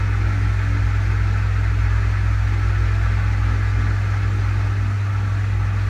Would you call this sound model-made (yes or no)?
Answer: no